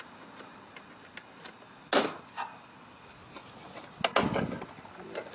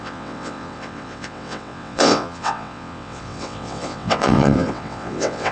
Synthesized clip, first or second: second